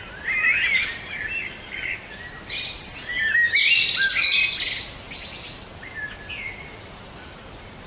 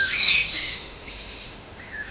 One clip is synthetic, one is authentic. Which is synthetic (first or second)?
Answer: second